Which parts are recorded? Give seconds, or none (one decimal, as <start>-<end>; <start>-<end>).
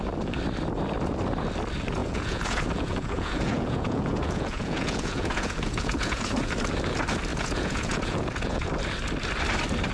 0.0-2.0; 6.5-7.3; 8.7-9.9